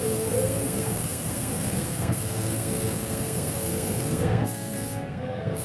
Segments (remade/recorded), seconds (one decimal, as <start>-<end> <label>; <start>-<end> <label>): 0.0-5.6 remade